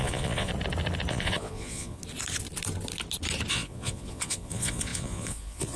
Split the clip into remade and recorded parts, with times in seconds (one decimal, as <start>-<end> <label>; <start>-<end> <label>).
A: 0.0-0.5 remade; 0.5-1.1 recorded; 1.1-2.0 remade; 2.0-3.5 recorded; 3.5-5.8 remade